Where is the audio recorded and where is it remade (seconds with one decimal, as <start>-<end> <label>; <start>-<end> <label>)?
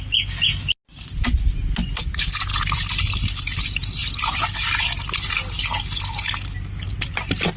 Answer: 0.0-7.6 recorded